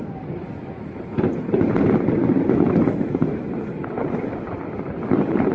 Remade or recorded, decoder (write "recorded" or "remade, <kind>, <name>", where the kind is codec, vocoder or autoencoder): recorded